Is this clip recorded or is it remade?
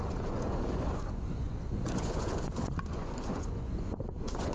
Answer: remade